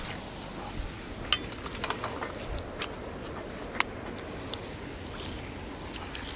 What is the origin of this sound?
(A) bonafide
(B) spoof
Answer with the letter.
A